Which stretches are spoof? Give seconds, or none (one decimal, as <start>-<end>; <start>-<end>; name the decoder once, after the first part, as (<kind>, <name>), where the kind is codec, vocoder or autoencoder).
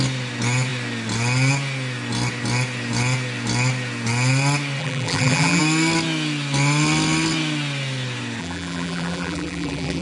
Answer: 4.8-5.6 (vocoder, BigVGAN v2); 8.4-10.0